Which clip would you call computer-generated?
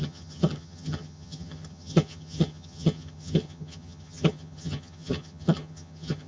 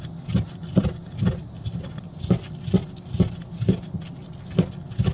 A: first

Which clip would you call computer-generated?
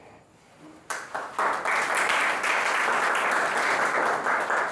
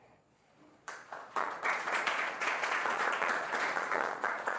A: second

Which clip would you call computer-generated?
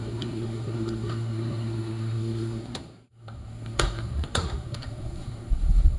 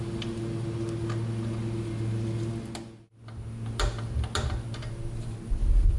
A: first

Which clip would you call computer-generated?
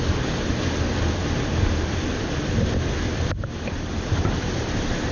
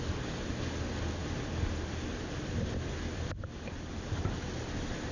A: first